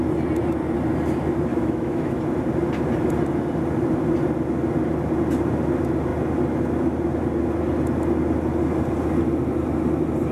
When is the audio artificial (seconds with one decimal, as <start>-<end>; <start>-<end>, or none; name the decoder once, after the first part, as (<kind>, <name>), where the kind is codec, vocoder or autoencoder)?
1.5-2.2 (autoencoder, DAC-VAE)

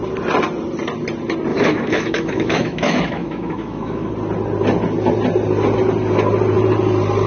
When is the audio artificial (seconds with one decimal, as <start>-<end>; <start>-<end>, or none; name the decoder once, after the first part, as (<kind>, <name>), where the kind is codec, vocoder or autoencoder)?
1.5-4.1 (autoencoder, DAC-VAE)

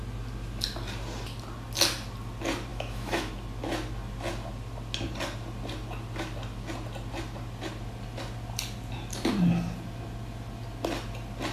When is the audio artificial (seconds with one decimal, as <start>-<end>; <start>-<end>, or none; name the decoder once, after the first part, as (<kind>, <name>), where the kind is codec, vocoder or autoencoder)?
2.7-3.3 (autoencoder, DAC-VAE)